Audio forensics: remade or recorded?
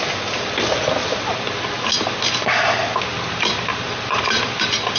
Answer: recorded